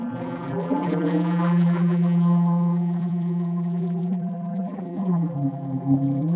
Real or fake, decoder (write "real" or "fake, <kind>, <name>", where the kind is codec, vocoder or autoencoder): fake, vocoder, BigVGAN v2